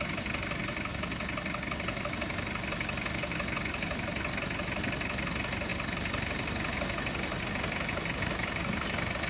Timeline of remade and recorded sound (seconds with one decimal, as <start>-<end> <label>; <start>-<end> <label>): 0.0-9.3 recorded